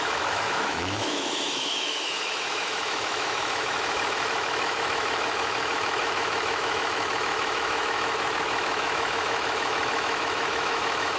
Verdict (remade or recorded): remade